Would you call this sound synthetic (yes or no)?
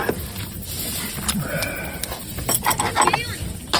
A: no